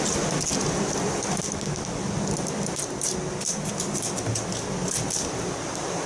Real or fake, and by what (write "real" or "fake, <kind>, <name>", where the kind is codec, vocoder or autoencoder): real